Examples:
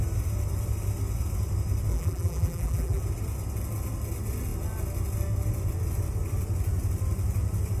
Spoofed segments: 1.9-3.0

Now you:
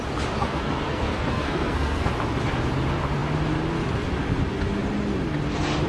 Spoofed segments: 0.4-2.1

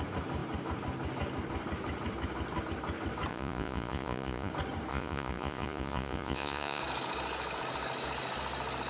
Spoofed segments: 3.3-4.5; 4.9-6.8

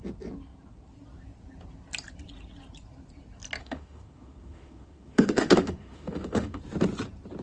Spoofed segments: 3.6-6.6